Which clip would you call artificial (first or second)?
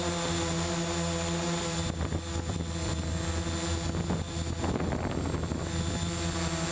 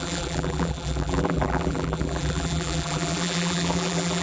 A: second